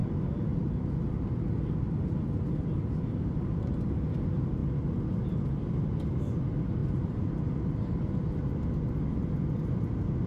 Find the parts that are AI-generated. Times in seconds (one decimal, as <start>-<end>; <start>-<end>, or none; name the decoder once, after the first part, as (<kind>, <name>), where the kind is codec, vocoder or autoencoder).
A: none